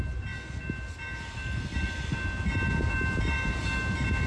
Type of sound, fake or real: real